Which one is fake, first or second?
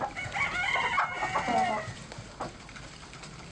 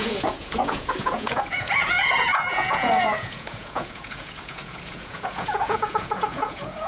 second